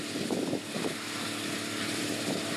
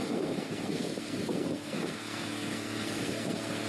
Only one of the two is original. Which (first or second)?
first